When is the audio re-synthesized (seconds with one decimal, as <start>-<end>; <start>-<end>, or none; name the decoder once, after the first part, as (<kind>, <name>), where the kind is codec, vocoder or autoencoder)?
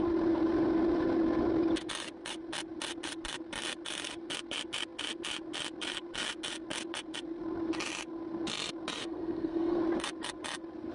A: 9.0-9.8 (codec, SNAC)